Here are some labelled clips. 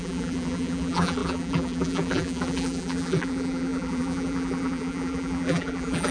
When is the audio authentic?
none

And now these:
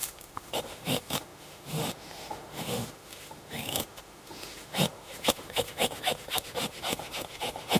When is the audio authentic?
none

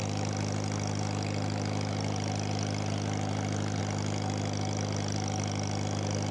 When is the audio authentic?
0.0-6.3

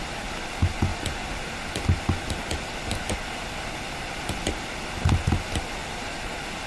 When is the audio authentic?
0.0-6.7

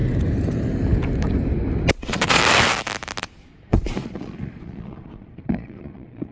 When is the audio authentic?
0.0-1.9; 2.4-3.2